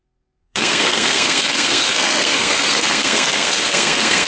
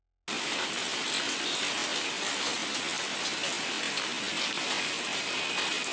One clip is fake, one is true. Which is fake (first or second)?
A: first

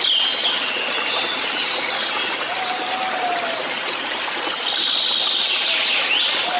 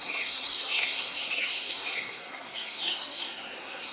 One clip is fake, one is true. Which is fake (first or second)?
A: second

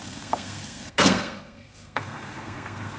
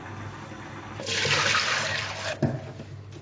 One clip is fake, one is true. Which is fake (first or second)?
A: first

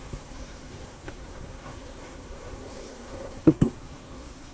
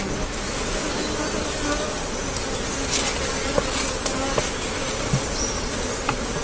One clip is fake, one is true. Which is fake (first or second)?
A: first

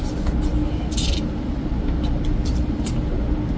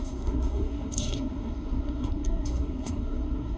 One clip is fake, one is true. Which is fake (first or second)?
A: second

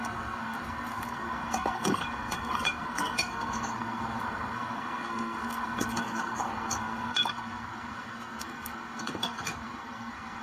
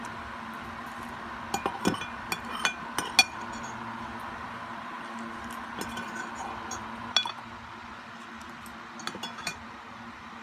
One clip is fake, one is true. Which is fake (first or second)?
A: first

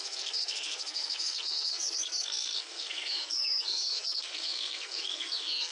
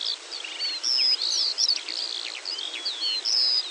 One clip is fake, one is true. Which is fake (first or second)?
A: first